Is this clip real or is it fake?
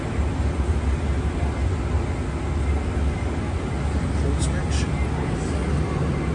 real